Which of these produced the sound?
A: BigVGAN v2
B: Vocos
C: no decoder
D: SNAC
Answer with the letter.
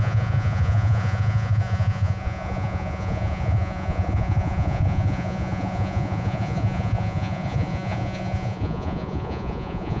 B